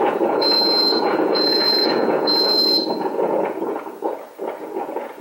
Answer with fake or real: fake